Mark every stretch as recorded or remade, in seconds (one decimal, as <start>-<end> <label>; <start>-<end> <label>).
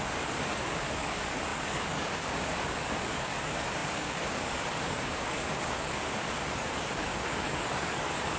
0.0-8.4 remade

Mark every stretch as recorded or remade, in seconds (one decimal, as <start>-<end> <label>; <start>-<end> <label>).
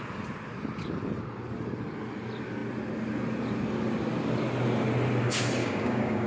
0.0-5.6 recorded; 5.6-6.3 remade